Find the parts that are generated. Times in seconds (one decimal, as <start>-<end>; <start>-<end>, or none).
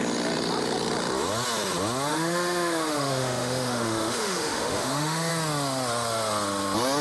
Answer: 2.1-5.3